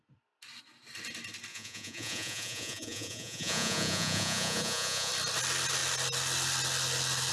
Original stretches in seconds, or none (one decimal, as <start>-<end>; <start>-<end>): 0.0-1.5; 5.1-7.3